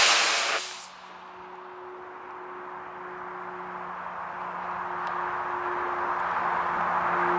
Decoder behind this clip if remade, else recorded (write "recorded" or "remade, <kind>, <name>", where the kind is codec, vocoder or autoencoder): recorded